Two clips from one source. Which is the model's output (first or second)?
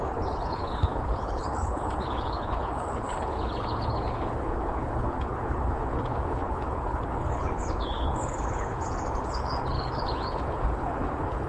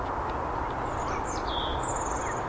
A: first